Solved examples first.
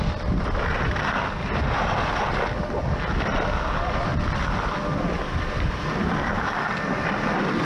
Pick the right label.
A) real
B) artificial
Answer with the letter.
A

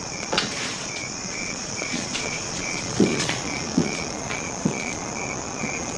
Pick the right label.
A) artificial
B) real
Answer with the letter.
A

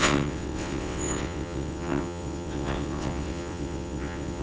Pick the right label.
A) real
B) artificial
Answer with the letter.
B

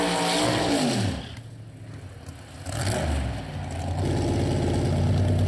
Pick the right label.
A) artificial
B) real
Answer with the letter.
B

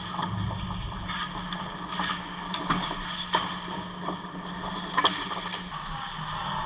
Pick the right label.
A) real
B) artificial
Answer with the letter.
A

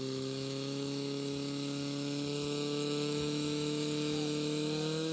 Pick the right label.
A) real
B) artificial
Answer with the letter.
B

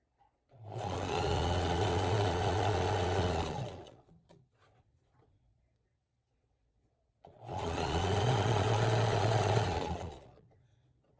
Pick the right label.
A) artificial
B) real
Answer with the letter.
A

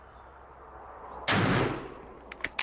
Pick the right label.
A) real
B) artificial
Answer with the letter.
A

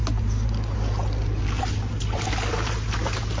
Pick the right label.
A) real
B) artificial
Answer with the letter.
A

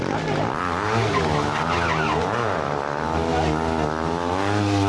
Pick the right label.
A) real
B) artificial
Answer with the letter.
A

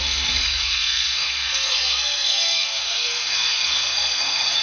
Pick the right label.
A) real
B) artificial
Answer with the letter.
B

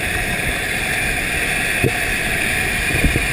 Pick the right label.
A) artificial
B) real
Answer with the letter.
A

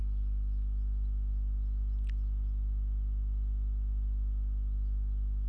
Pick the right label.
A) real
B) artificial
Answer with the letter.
A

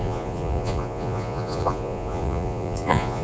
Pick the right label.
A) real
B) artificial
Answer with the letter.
B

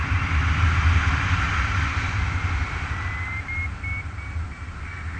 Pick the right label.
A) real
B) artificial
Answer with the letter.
A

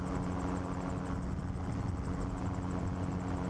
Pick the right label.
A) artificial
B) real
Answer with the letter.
B